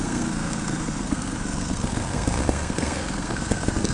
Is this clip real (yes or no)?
no